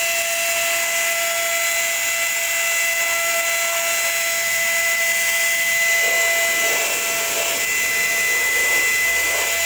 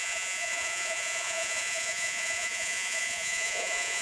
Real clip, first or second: first